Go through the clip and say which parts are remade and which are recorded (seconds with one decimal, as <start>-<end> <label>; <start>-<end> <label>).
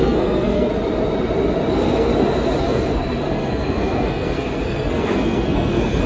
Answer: 0.0-0.7 remade; 0.7-1.7 recorded; 1.7-2.1 remade; 2.1-2.6 recorded; 2.6-6.1 remade